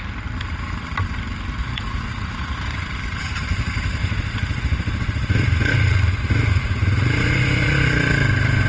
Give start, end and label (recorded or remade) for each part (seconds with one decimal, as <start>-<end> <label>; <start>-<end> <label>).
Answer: 0.0-1.6 recorded; 1.6-2.8 remade; 2.8-4.0 recorded; 4.0-7.7 remade; 7.7-8.7 recorded